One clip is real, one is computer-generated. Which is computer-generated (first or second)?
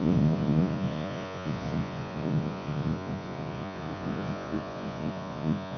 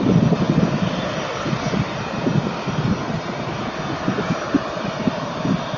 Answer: first